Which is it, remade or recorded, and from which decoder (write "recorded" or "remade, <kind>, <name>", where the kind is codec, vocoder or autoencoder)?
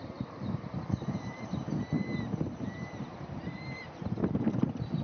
remade, vocoder, BigVGAN v2